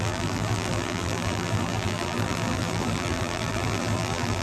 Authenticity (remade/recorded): remade